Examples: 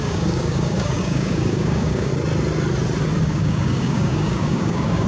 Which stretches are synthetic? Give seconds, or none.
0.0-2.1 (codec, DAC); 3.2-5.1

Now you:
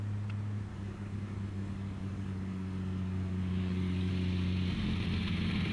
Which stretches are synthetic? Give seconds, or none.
0.7-4.1 (codec, DAC)

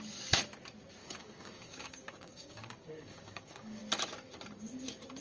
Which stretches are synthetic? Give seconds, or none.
1.0-3.8 (codec, DAC)

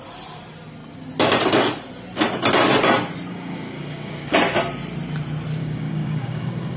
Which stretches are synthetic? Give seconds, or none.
3.3-4.3 (codec, DAC); 5.6-6.8

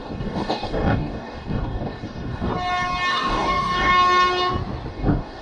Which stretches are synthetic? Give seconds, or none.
0.0-2.5 (codec, DAC); 3.1-3.9; 4.9-5.4

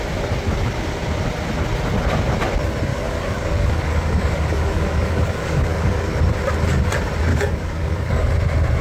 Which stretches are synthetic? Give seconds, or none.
2.9-6.2 (codec, DAC); 7.3-8.3

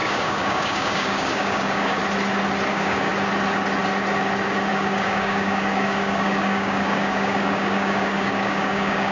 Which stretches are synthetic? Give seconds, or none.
0.0-2.0 (codec, DAC); 2.7-3.1; 4.7-9.1